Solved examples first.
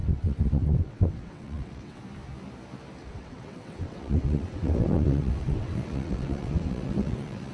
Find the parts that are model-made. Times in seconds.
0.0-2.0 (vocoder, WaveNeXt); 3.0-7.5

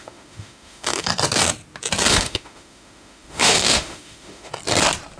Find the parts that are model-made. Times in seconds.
0.0-1.1 (autoencoder, DAC-VAE); 2.1-4.5

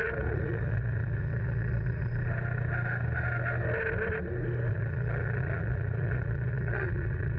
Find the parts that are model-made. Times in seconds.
0.0-2.1 (vocoder, Vocos); 4.7-7.4

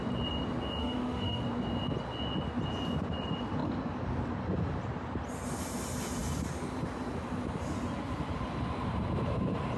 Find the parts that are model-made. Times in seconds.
0.8-1.4 (autoencoder, DAC-VAE)

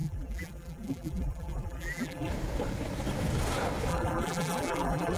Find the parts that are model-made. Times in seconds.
0.0-2.3 (vocoder, BigVGAN v2); 3.9-5.2

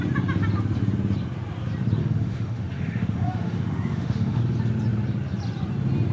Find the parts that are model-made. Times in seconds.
2.0-4.4 (autoencoder, DAC-VAE)

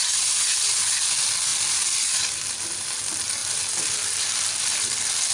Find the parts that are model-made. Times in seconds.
none